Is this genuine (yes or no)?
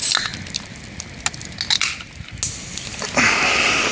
yes